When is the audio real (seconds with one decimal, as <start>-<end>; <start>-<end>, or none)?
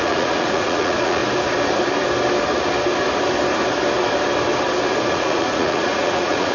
1.2-5.1